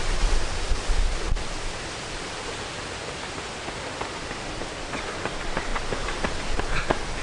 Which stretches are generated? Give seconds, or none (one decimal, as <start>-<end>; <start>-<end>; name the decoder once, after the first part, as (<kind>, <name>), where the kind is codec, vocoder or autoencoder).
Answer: none